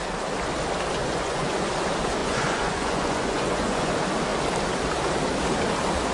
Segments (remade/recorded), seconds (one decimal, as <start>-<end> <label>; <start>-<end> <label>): 0.0-1.0 recorded; 1.0-1.7 remade; 1.7-2.2 recorded; 2.2-3.9 remade; 3.9-6.1 recorded